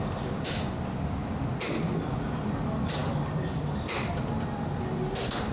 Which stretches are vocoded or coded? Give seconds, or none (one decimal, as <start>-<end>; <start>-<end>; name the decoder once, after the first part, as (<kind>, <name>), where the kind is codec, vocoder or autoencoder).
none